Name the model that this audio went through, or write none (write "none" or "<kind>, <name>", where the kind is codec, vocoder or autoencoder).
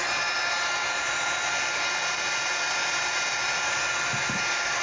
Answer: none